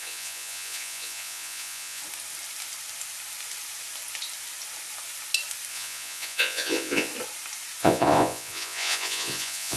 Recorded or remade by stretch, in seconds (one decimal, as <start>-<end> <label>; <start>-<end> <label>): 0.0-2.0 remade; 2.0-5.7 recorded; 5.7-7.1 remade; 7.1-7.8 recorded; 7.8-9.8 remade